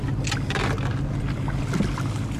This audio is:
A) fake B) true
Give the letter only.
B